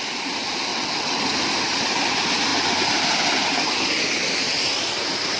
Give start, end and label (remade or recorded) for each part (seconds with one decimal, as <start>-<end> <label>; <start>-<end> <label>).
0.0-0.7 recorded; 0.7-1.2 remade; 1.2-5.4 recorded